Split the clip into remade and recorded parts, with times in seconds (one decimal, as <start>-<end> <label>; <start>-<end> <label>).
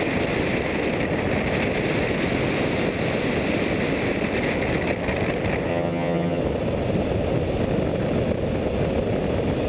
0.0-5.7 recorded; 5.7-6.4 remade; 6.4-9.7 recorded